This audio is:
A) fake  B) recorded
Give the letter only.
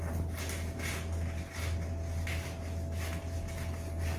B